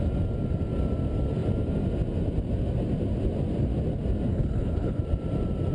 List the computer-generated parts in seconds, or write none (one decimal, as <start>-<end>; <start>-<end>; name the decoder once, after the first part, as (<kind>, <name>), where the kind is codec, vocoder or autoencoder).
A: 4.3-5.0 (codec, HILCodec)